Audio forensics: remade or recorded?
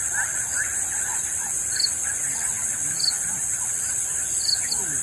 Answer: recorded